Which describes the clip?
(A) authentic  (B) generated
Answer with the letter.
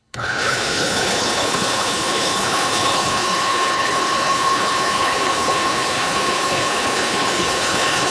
B